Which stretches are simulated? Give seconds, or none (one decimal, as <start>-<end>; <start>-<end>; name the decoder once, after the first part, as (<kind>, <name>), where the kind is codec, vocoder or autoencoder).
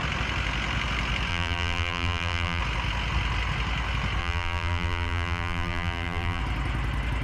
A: 1.3-2.6 (vocoder, BigVGAN v2); 4.2-6.4